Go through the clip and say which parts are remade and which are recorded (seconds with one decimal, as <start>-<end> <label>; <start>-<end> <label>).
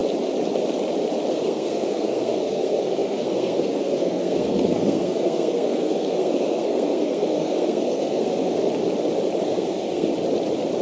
0.0-1.3 recorded; 1.3-8.6 remade; 8.6-9.4 recorded; 9.4-10.1 remade; 10.1-10.8 recorded